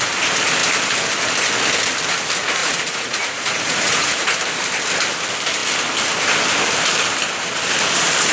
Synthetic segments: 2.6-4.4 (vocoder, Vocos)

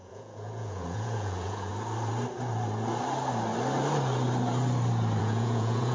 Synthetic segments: 0.0-1.7 (vocoder, Vocos); 5.2-5.9

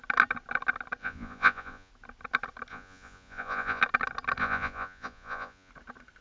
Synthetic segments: 1.0-1.9 (vocoder, Vocos); 2.7-3.8; 4.4-5.7

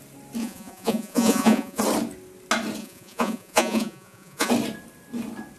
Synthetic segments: 0.4-1.8 (vocoder, Vocos); 2.8-4.5

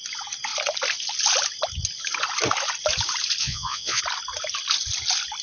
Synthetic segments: 3.4-4.0 (vocoder, Vocos)

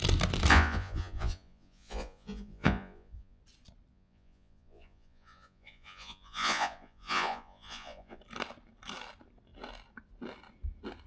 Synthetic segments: 0.5-3.4 (vocoder, Vocos); 3.9-8.2

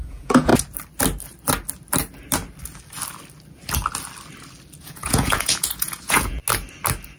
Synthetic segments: 0.0-0.5 (vocoder, Vocos); 4.8-6.4

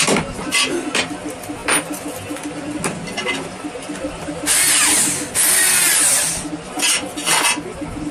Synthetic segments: none